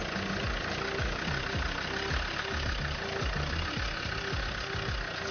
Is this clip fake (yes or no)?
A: no